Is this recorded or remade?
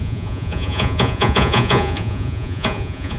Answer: remade